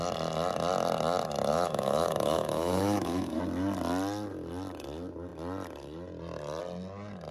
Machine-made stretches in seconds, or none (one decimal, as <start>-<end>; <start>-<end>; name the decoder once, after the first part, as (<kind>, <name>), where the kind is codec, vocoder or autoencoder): 1.5-3.4 (autoencoder, DAC-VAE)